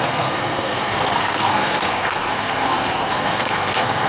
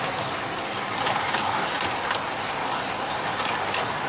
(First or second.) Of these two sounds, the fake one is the first